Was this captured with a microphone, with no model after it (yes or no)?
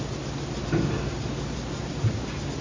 yes